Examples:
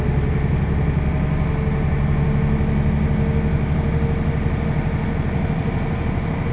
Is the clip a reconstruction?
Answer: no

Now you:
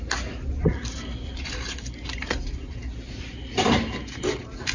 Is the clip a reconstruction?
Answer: no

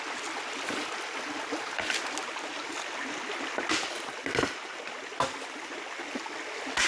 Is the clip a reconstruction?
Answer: no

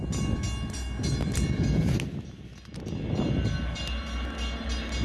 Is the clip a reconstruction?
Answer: no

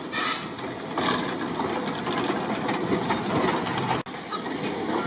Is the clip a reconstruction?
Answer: no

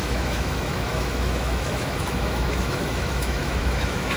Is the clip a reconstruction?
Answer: yes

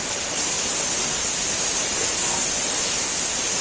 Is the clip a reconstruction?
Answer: no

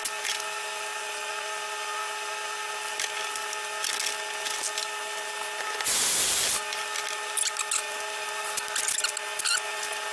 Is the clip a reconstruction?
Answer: no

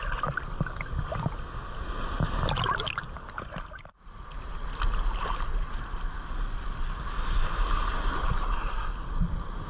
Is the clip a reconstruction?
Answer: no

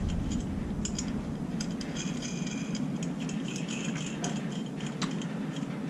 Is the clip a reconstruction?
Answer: no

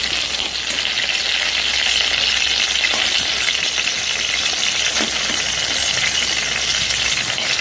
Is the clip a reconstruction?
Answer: no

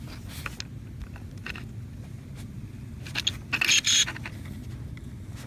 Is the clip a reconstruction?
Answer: no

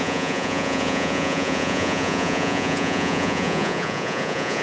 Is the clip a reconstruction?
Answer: yes